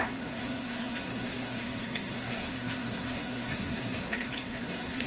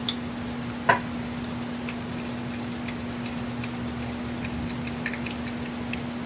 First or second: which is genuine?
second